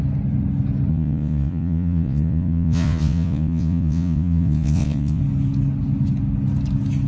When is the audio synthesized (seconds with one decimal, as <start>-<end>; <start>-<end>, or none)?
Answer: 0.9-5.2